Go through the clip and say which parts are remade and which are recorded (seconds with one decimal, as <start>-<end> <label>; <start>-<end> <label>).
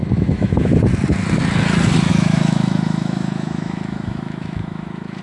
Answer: 0.0-0.7 remade; 0.7-2.1 recorded; 2.1-5.2 remade